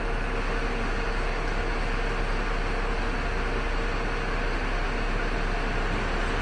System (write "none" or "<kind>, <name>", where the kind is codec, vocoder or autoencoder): none